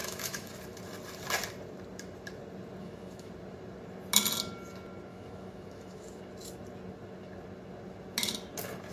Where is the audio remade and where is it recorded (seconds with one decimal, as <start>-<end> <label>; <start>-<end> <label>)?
0.0-0.5 remade; 0.5-2.8 recorded; 2.8-3.3 remade; 3.3-5.1 recorded; 5.1-6.2 remade; 6.2-8.9 recorded